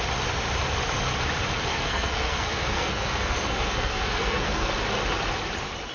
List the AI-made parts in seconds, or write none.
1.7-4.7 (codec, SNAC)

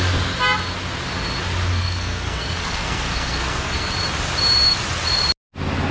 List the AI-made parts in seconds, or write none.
1.7-3.9 (codec, SNAC)

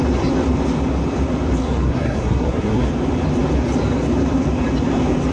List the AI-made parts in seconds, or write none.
1.6-2.9 (codec, SNAC)

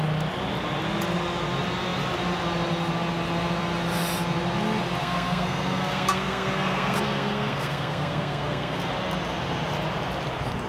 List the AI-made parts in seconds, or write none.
5.0-8.9 (codec, SNAC)

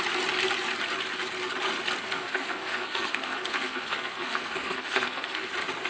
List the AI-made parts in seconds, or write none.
2.0-5.5 (codec, SNAC)

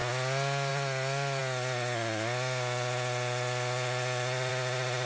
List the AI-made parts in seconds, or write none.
none